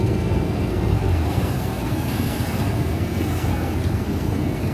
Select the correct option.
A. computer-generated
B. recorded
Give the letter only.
A